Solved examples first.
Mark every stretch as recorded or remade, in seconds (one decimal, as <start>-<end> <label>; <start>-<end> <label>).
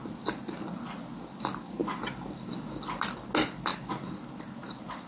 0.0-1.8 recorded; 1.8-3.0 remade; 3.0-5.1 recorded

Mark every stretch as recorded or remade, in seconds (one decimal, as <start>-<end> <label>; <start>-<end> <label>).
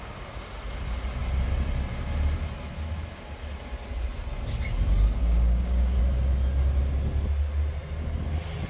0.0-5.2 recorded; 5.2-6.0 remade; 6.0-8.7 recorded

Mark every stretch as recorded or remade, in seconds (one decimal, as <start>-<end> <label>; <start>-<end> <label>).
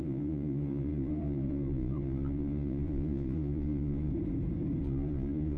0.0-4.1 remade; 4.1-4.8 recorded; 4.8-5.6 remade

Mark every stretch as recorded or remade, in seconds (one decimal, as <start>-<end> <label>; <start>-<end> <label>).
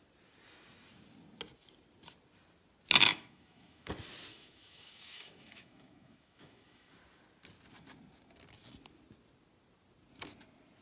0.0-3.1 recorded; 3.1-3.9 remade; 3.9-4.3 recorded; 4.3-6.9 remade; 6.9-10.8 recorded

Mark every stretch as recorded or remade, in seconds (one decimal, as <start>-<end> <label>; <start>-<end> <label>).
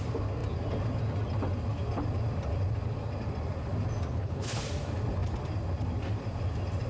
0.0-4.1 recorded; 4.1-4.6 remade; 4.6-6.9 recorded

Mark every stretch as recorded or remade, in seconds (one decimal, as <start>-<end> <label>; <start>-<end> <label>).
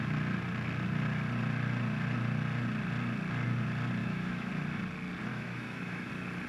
0.0-4.0 recorded; 4.0-4.5 remade; 4.5-5.3 recorded; 5.3-6.1 remade; 6.1-6.5 recorded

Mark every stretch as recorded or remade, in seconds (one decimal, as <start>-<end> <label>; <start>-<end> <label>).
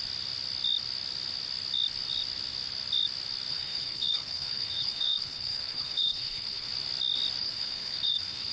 0.0-3.5 recorded; 3.5-6.7 remade; 6.7-7.4 recorded; 7.4-8.5 remade